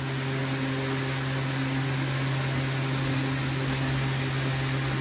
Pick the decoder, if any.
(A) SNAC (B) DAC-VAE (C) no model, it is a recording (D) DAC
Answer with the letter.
C